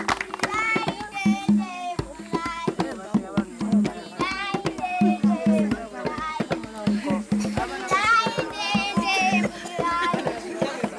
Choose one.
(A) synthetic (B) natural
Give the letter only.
B